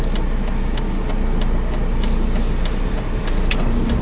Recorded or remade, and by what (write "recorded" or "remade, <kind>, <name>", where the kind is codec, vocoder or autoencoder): recorded